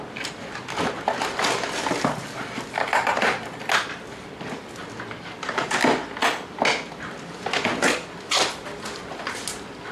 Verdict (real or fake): real